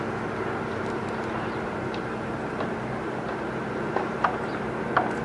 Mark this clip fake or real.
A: real